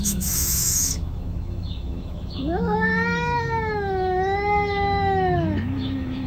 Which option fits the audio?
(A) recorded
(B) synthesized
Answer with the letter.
B